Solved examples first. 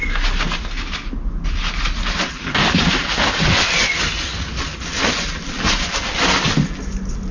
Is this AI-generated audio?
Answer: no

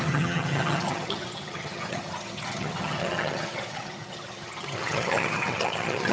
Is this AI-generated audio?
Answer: yes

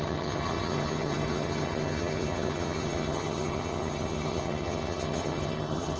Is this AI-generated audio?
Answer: yes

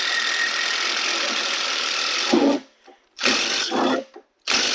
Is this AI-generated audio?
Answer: no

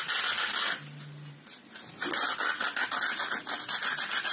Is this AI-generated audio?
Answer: no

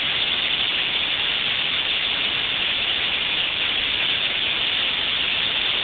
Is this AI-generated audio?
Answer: no